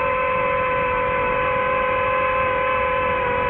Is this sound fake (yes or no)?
no